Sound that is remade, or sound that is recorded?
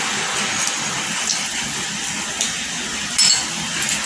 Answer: recorded